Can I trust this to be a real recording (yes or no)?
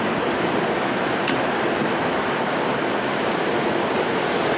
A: yes